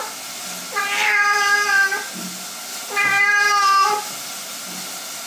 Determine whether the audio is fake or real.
real